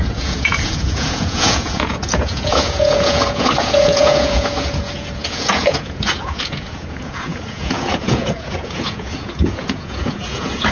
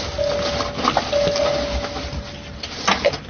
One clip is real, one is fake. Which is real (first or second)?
second